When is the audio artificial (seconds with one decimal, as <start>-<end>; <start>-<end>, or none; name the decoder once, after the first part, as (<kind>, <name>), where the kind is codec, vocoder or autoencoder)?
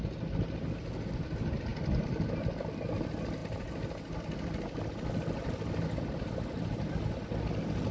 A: none